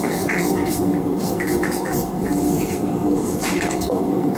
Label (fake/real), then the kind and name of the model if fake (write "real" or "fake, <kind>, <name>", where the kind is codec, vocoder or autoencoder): fake, codec, SNAC